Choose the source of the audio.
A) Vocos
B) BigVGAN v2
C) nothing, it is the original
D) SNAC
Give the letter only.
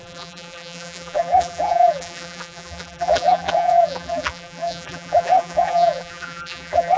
B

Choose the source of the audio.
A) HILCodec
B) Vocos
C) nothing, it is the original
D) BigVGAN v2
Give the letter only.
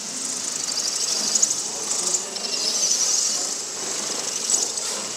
C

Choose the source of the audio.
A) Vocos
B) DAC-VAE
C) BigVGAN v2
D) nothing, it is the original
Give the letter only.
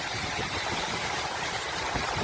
C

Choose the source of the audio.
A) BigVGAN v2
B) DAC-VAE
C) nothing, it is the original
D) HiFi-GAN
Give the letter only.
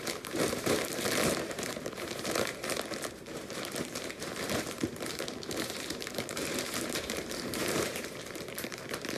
A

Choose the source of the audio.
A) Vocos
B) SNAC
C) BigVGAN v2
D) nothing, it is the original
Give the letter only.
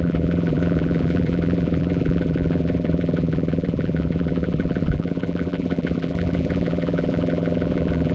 C